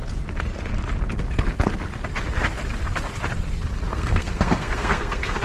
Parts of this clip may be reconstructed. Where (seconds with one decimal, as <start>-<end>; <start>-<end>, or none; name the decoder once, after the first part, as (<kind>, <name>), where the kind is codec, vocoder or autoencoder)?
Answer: 3.9-5.4 (codec, SNAC)